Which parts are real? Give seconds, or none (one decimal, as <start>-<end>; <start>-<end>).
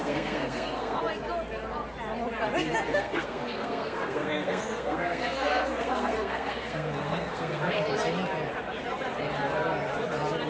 1.0-2.9; 7.9-10.5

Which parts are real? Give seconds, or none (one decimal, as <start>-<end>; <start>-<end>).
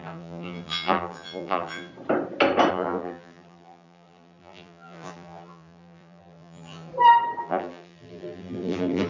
1.9-2.7; 6.9-7.4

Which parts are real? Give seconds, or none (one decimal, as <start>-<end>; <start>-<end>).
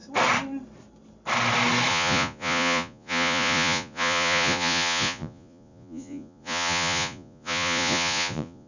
0.0-1.9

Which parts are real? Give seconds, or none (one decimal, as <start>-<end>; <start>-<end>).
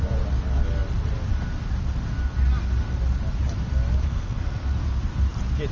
0.0-4.0; 4.7-5.7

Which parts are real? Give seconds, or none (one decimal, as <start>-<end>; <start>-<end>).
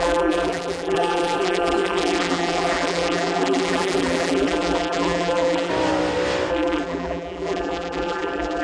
5.7-6.5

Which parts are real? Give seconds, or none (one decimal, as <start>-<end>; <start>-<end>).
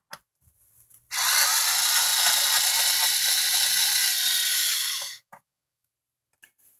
0.0-4.5; 5.9-6.8